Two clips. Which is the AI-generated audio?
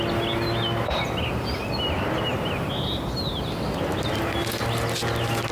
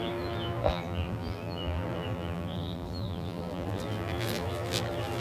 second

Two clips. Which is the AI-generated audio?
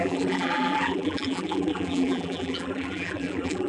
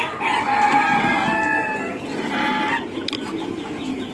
first